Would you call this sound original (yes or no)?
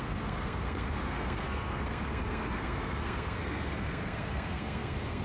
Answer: no